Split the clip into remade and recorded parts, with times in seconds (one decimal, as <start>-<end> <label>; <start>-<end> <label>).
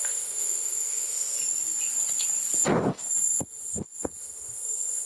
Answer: 0.0-1.4 remade; 1.4-4.2 recorded; 4.2-5.1 remade